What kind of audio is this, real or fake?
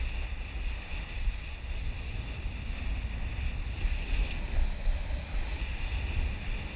real